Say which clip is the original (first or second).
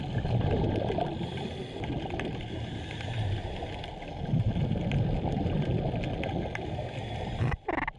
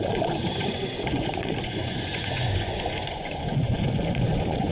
first